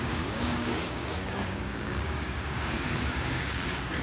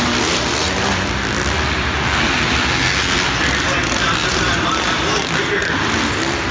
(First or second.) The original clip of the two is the second